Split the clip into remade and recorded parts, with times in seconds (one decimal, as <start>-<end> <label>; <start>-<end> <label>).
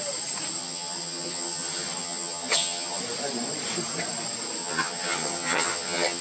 0.0-0.6 recorded; 0.6-3.0 remade; 3.0-4.6 recorded; 4.6-6.2 remade